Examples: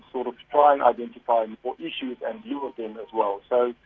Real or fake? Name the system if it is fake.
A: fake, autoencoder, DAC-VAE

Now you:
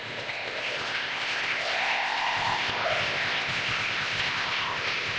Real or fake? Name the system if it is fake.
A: fake, codec, ZipCodec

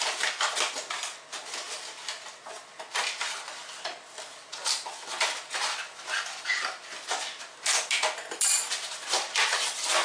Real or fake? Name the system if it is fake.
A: real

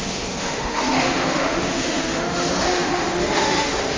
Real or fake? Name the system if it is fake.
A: fake, autoencoder, DAC-VAE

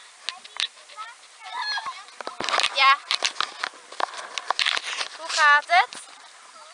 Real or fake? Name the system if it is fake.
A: real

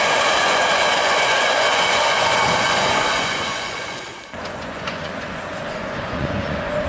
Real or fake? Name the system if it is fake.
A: fake, vocoder, Vocos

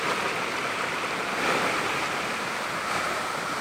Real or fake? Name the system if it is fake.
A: real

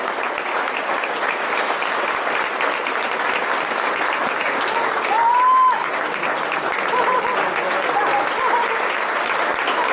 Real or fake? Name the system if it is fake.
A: real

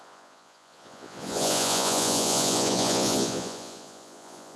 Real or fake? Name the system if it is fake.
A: fake, vocoder, Vocos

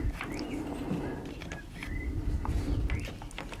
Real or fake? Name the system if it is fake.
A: real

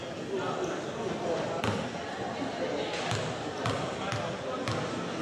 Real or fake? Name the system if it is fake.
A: real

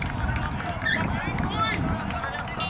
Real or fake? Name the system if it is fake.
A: real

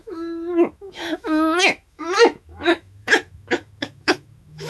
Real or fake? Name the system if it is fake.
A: fake, autoencoder, DAC-VAE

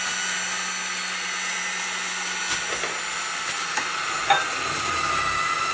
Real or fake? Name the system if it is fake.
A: real